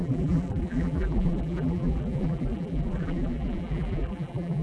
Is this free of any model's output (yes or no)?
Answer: no